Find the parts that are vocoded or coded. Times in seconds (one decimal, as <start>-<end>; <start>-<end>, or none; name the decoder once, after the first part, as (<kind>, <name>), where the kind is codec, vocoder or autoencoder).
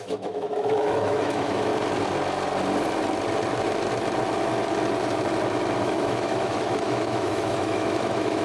0.0-1.7 (autoencoder, DAC-VAE); 5.8-8.4